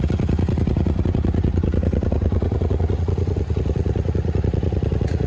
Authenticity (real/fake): fake